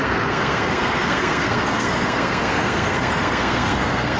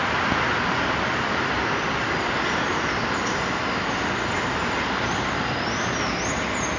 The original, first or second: second